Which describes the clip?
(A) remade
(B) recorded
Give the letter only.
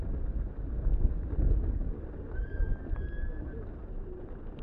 B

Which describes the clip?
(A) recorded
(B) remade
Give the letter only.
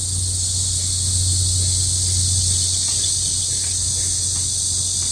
A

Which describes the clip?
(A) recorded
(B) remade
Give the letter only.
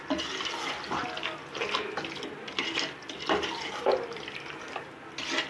A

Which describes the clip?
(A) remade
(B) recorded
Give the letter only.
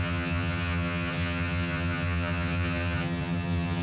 A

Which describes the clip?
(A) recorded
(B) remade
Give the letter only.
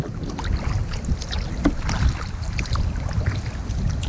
A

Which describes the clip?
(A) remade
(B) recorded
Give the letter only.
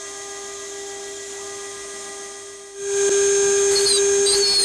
B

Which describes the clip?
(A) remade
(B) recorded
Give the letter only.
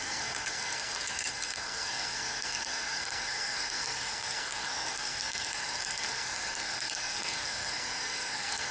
A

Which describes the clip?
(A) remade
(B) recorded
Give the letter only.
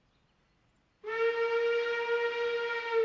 B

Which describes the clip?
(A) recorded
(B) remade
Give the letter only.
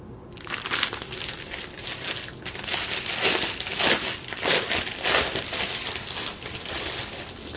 B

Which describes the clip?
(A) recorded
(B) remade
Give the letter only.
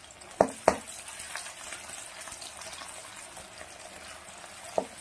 A